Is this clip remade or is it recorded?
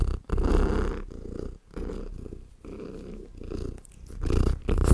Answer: recorded